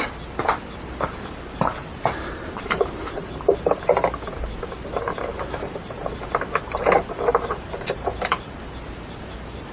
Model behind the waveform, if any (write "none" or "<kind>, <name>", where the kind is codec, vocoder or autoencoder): vocoder, BigVGAN v2